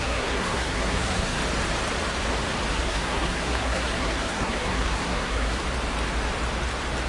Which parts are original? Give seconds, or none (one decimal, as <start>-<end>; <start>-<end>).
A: 1.4-2.7; 5.6-7.1